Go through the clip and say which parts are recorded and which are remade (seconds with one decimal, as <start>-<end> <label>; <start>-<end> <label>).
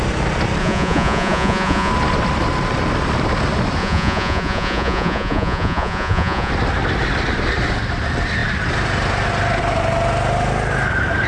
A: 0.0-0.6 recorded; 0.6-1.9 remade; 1.9-3.8 recorded; 3.8-6.5 remade; 6.5-11.3 recorded